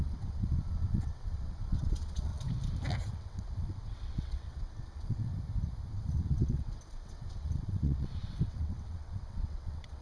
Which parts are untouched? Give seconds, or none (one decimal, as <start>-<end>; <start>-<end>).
2.3-3.1; 5.3-5.9